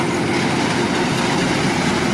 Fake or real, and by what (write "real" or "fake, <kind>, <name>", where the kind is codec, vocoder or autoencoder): real